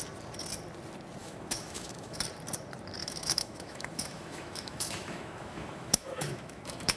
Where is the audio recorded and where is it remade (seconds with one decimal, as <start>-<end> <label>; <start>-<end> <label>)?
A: 0.0-1.2 recorded; 1.2-2.2 remade; 2.2-3.0 recorded; 3.0-7.0 remade